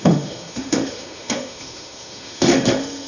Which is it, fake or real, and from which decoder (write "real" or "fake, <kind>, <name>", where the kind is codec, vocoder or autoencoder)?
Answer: fake, autoencoder, DAC-VAE